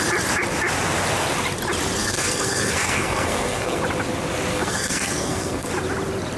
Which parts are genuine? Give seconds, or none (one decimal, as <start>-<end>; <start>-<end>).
0.0-2.0; 3.8-4.5; 5.7-6.4